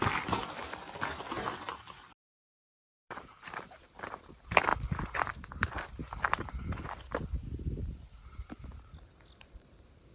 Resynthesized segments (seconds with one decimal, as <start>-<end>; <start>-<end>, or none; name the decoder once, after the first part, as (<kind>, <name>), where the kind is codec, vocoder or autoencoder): 0.0-4.7 (vocoder, BigVGAN v2); 9.0-10.1